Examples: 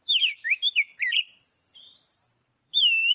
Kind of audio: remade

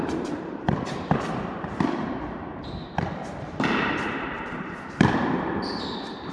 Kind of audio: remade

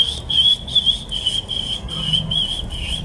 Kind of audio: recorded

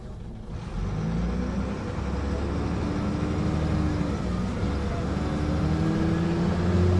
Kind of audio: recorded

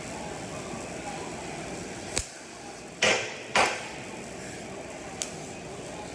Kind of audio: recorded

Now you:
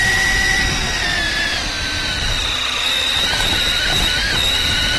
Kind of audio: recorded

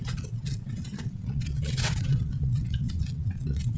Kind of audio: remade